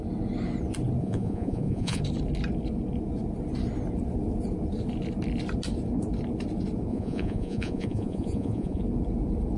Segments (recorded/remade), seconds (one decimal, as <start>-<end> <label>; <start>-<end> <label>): 0.0-1.0 recorded; 1.0-2.0 remade; 2.0-6.9 recorded; 6.9-8.8 remade; 8.8-9.6 recorded